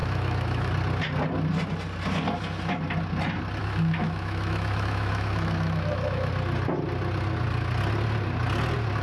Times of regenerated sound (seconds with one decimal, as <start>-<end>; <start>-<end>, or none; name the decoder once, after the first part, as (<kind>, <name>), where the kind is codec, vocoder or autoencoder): 0.0-0.7 (autoencoder, DAC-VAE); 3.6-6.3